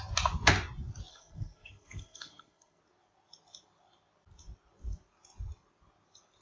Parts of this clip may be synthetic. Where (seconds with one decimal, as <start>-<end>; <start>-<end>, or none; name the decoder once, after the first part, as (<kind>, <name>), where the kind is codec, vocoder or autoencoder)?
1.1-2.8 (codec, SNAC)